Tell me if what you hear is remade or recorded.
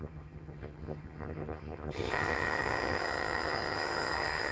remade